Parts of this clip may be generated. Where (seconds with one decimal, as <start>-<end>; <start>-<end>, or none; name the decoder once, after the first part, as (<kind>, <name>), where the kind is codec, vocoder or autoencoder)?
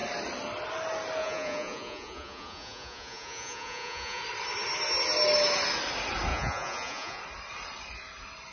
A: 1.2-4.2 (vocoder, Vocos); 6.3-7.2